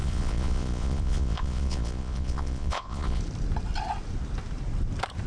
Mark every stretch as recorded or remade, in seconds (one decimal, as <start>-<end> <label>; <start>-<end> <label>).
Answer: 0.0-3.2 remade; 3.2-5.3 recorded